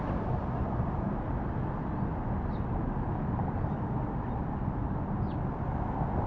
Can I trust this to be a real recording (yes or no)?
yes